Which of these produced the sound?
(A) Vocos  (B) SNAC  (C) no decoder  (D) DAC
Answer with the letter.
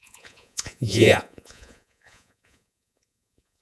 A